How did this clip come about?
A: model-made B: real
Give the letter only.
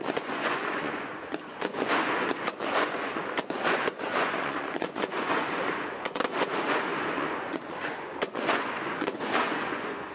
A